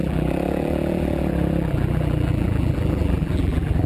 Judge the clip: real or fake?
fake